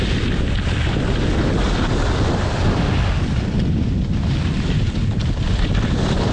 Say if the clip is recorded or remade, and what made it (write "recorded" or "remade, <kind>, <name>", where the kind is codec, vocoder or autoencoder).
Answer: recorded